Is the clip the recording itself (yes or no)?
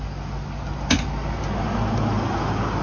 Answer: yes